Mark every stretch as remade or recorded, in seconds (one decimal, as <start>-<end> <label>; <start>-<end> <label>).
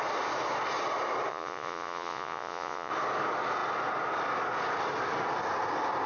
0.0-1.3 recorded; 1.3-2.9 remade; 2.9-6.1 recorded